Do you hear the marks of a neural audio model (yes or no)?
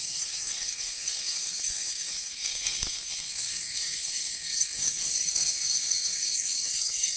yes